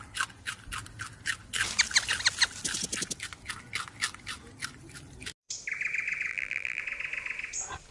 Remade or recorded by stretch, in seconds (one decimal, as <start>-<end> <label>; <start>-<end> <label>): 0.0-6.3 recorded; 6.3-6.8 remade; 6.8-7.9 recorded